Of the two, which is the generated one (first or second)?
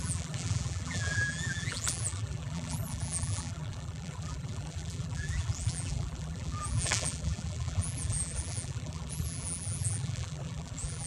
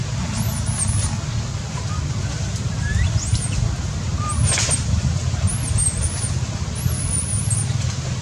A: first